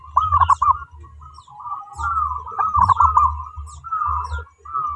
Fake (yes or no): no